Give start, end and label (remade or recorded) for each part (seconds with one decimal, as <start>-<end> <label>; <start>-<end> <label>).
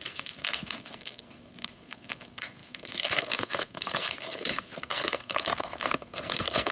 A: 0.0-6.7 remade